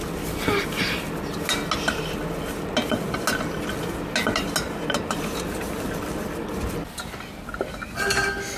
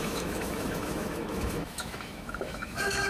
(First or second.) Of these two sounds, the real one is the first